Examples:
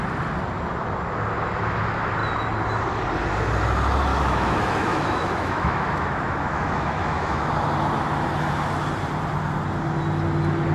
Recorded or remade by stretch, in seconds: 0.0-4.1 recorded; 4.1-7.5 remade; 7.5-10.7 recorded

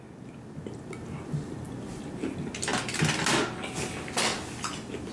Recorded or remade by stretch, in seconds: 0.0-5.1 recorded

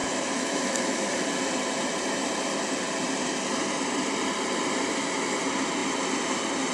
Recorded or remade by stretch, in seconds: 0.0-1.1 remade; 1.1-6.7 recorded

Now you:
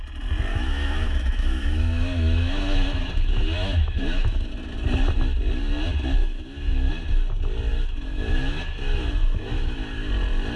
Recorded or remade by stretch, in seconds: 0.0-0.5 recorded; 0.5-4.5 remade; 4.5-6.2 recorded; 6.2-6.9 remade; 6.9-7.7 recorded; 7.7-10.1 remade; 10.1-10.6 recorded

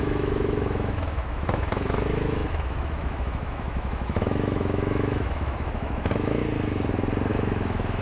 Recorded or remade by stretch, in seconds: 0.0-6.4 remade; 6.4-7.3 recorded; 7.3-8.0 remade